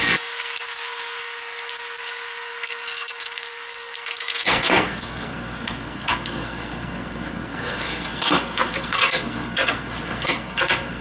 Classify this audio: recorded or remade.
remade